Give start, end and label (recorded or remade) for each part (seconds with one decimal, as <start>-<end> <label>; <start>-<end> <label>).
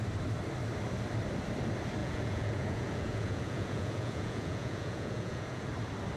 0.0-2.0 recorded; 2.0-5.7 remade; 5.7-6.2 recorded